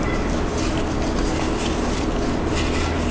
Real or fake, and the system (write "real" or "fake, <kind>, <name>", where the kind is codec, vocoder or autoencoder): real